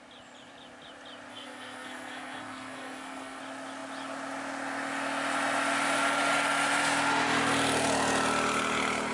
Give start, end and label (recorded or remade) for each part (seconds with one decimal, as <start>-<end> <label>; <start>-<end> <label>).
0.0-1.3 recorded; 1.3-3.4 remade; 3.4-9.1 recorded

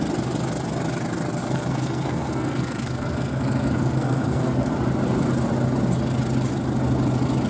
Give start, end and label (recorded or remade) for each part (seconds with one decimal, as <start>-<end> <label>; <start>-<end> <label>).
0.0-1.4 recorded; 1.4-4.7 remade; 4.7-7.5 recorded

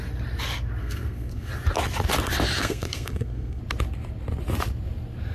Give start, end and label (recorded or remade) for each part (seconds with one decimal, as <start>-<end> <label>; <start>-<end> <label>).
0.0-0.8 recorded; 0.8-1.5 remade; 1.5-2.6 recorded; 2.6-3.6 remade; 3.6-5.3 recorded

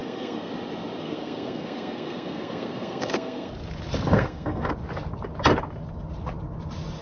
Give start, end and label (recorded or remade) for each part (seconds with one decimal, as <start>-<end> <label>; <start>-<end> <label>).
0.0-0.5 remade; 0.5-1.0 recorded; 1.0-3.5 remade; 3.5-4.1 recorded; 4.1-4.7 remade; 4.7-7.0 recorded

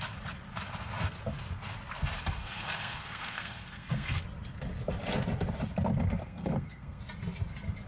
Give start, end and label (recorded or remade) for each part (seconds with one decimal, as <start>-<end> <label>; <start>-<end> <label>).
0.0-2.4 recorded; 2.4-4.2 remade; 4.2-6.2 recorded; 6.2-7.0 remade; 7.0-7.9 recorded

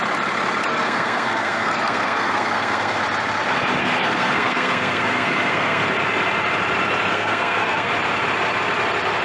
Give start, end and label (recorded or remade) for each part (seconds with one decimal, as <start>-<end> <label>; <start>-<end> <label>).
0.0-0.7 recorded; 0.7-3.0 remade; 3.0-3.8 recorded; 3.8-5.8 remade; 5.8-7.1 recorded; 7.1-7.9 remade; 7.9-9.2 recorded

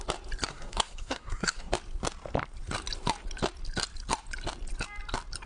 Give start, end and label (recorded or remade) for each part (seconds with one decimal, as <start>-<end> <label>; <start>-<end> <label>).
0.0-0.5 recorded; 0.5-1.7 remade; 1.7-5.5 recorded

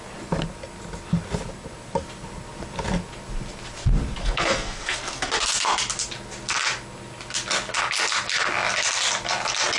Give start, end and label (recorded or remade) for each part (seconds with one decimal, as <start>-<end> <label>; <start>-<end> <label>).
0.0-4.2 recorded; 4.2-5.3 remade; 5.3-9.8 recorded